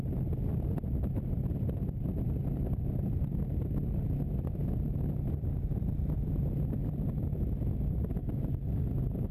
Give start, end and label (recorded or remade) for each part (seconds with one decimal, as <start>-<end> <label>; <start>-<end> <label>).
0.0-6.8 recorded; 6.8-7.5 remade; 7.5-9.3 recorded